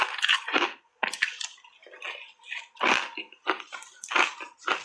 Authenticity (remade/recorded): recorded